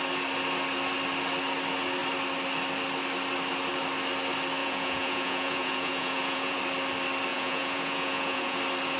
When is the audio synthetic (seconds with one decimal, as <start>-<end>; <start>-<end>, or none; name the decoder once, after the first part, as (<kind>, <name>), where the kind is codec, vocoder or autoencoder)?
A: 4.6-6.6 (vocoder, Vocos); 7.3-8.6